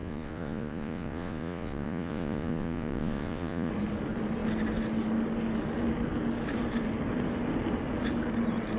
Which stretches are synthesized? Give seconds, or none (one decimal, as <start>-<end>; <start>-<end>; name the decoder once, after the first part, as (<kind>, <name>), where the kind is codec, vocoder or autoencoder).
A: 0.0-3.7 (vocoder, Vocos)